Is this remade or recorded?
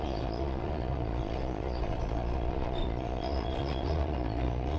remade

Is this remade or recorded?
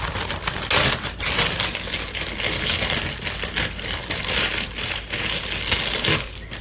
recorded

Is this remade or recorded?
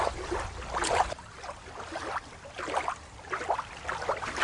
recorded